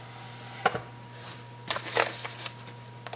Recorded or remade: recorded